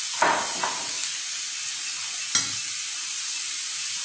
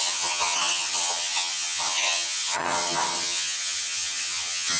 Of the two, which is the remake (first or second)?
second